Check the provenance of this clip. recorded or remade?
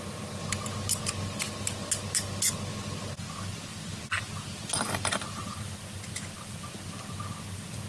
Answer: recorded